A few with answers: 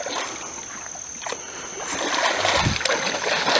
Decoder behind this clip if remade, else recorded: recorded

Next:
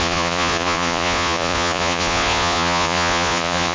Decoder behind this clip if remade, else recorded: remade, vocoder, Vocos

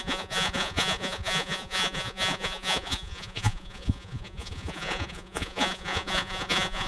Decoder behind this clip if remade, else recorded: remade, vocoder, Vocos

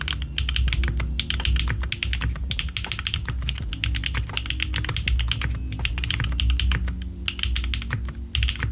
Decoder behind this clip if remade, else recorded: recorded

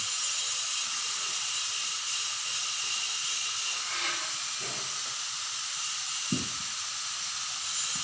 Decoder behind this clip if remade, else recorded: recorded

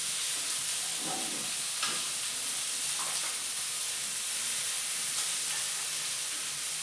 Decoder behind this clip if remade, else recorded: recorded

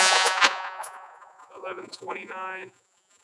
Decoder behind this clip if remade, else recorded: remade, vocoder, Vocos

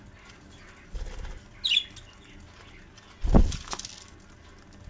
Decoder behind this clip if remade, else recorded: recorded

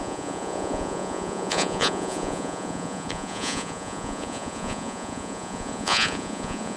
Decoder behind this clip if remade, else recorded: remade, vocoder, Vocos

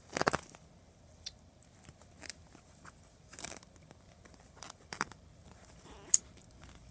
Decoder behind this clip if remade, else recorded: recorded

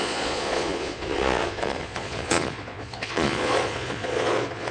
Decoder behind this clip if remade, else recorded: remade, vocoder, Vocos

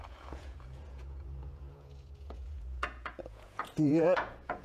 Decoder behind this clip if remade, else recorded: remade, vocoder, Vocos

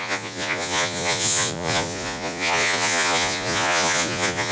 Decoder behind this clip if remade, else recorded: remade, vocoder, Vocos